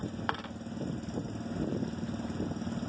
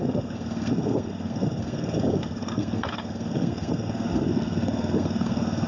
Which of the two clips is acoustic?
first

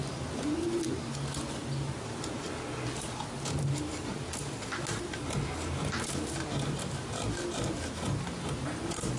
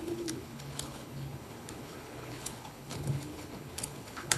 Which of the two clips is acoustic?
first